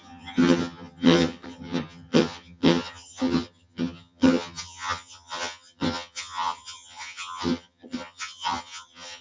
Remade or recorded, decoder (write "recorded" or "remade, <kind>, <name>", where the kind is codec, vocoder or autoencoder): remade, vocoder, HiFi-GAN